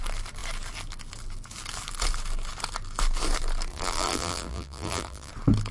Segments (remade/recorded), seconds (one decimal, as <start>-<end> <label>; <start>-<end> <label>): 0.0-3.7 recorded; 3.7-5.3 remade; 5.3-5.7 recorded